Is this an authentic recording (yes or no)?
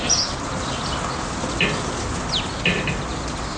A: yes